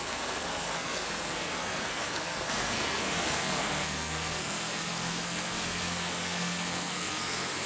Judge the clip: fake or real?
fake